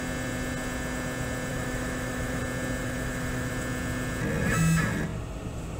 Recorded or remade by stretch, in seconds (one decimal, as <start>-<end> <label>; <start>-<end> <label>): 0.0-1.5 recorded; 1.5-2.4 remade; 2.4-2.8 recorded; 2.8-3.5 remade; 3.5-5.8 recorded